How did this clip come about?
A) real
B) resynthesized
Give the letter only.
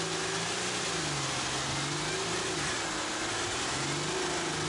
A